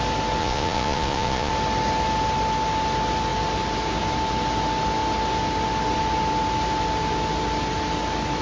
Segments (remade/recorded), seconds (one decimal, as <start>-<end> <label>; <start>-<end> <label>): 0.0-0.4 recorded; 0.4-1.5 remade; 1.5-8.4 recorded